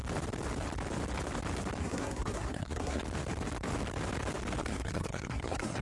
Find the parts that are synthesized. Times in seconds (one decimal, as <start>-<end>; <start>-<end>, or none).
1.8-3.0; 4.6-5.8